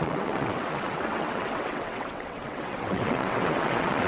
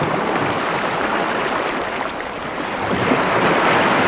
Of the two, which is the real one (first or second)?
second